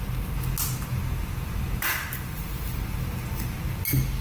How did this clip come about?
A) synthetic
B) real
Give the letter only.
B